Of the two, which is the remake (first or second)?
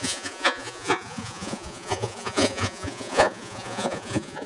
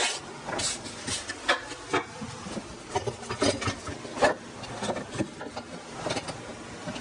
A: first